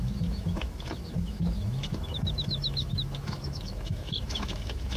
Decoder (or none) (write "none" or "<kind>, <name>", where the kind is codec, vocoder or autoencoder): autoencoder, DAC-VAE